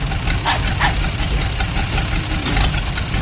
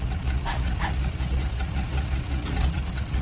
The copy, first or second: second